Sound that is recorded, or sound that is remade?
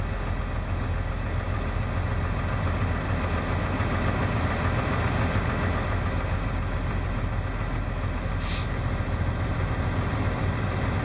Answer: recorded